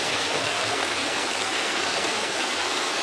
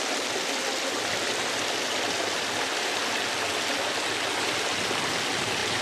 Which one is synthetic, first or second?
first